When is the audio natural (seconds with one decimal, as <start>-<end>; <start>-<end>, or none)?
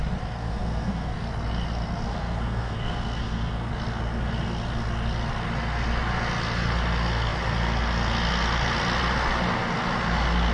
0.0-0.4; 1.1-2.1; 3.7-10.5